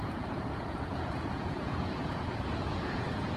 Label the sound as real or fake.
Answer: fake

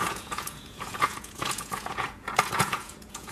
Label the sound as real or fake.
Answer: fake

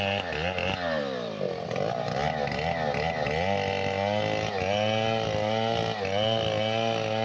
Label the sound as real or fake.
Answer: real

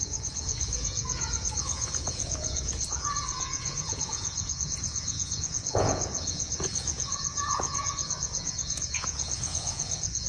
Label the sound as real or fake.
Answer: fake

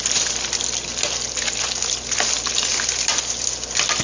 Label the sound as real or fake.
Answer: real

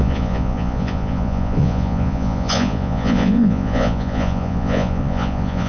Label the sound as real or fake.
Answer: fake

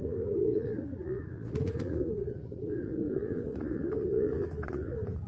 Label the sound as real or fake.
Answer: fake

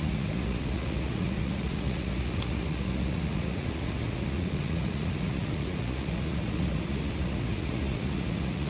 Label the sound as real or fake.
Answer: fake